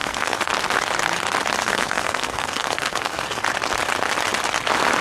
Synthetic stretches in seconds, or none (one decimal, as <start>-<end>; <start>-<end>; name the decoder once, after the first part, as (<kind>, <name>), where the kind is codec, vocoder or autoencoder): 0.0-0.5 (codec, SNAC); 1.6-3.4